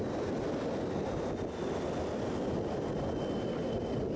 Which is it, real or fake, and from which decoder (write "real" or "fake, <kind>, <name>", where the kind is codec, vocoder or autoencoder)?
real